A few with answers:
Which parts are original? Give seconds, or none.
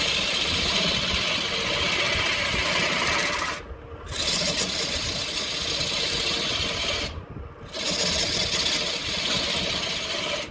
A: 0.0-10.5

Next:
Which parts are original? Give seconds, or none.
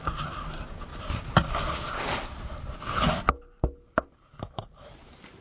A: 0.9-4.1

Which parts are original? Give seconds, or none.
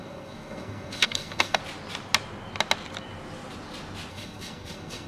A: 1.6-4.1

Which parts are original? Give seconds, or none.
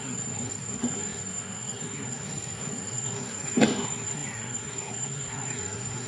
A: none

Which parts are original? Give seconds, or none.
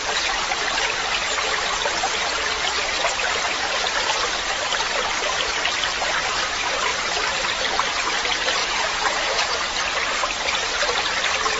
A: 0.0-8.6; 9.5-11.6